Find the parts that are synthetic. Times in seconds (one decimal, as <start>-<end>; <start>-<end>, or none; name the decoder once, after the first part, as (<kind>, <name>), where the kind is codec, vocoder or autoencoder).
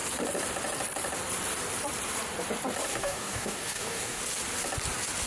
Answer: 2.9-4.2 (codec, DAC)